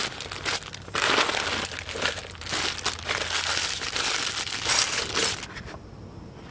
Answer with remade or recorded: recorded